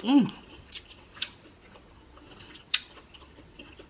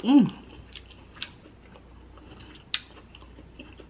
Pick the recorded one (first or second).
second